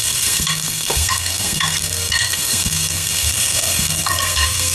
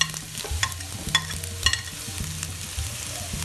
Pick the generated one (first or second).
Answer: first